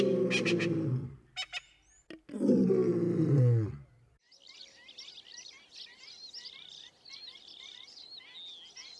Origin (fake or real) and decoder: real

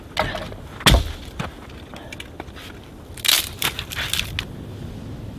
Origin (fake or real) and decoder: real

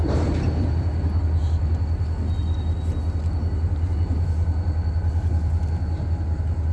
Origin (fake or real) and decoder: real